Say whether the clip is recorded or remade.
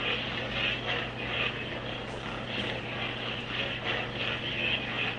recorded